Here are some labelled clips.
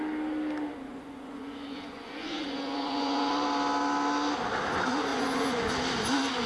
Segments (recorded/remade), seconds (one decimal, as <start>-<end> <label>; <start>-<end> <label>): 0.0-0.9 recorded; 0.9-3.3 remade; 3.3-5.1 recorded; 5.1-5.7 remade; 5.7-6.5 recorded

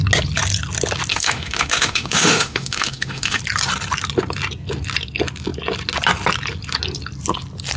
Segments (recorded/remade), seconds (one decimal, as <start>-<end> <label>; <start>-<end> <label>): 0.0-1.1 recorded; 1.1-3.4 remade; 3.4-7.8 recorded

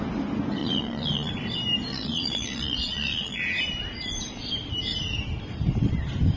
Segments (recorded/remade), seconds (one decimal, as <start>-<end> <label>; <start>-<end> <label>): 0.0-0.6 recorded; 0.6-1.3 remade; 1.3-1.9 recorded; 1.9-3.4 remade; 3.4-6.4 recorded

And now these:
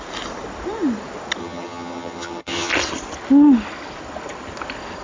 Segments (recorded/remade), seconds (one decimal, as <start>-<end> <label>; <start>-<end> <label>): 0.0-1.4 recorded; 1.4-2.7 remade; 2.7-5.0 recorded

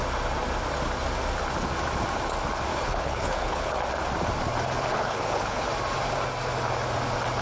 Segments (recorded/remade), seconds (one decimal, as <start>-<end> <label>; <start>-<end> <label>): 0.0-2.7 recorded; 2.7-3.7 remade; 3.7-4.9 recorded; 4.9-5.7 remade; 5.7-7.4 recorded

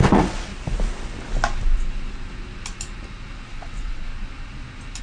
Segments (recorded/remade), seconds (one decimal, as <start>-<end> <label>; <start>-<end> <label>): 0.0-0.5 remade; 0.5-3.5 recorded; 3.5-4.1 remade; 4.1-5.0 recorded